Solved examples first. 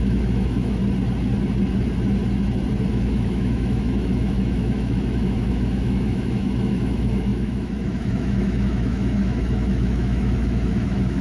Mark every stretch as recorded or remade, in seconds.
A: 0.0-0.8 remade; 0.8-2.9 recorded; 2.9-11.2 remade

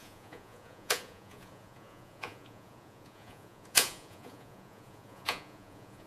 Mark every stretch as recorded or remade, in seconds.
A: 0.0-6.1 remade

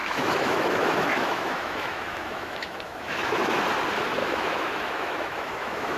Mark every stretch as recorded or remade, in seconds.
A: 0.0-3.6 remade; 3.6-4.2 recorded; 4.2-6.0 remade